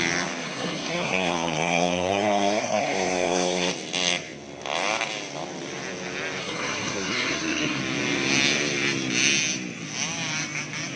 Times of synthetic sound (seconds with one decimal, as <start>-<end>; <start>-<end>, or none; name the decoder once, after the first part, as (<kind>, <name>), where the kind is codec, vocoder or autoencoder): 0.4-3.7 (codec, SNAC); 6.4-7.8